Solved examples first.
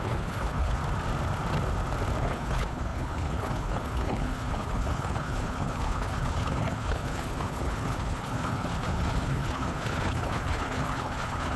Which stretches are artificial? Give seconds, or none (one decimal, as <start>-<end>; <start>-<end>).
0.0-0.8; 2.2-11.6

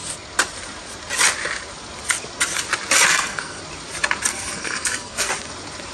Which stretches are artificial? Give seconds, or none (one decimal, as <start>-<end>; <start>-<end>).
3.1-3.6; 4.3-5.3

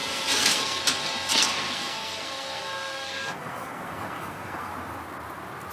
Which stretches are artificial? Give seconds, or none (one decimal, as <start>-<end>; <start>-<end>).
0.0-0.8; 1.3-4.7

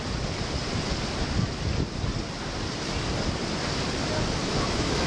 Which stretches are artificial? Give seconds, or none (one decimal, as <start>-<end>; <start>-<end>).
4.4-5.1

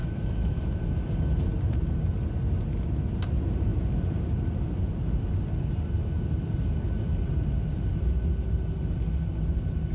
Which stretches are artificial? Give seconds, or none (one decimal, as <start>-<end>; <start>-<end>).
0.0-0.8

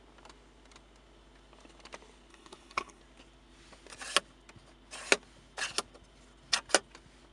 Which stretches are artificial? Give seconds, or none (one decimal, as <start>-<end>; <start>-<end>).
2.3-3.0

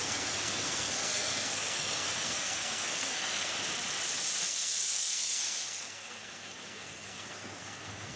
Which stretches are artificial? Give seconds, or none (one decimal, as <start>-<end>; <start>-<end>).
0.0-3.5; 4.4-8.2

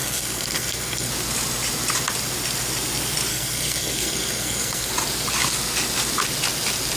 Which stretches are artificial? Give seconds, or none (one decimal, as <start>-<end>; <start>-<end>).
0.0-1.1; 3.3-4.9